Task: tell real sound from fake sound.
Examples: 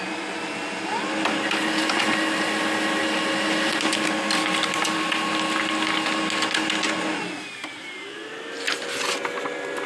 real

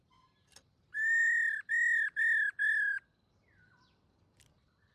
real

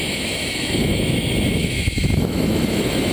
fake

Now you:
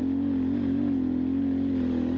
real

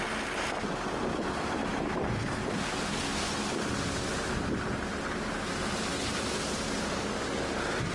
real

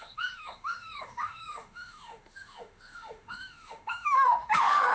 fake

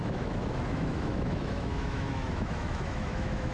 fake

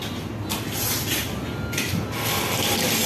real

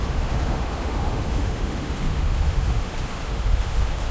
fake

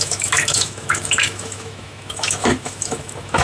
fake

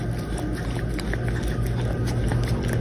real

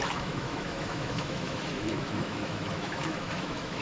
fake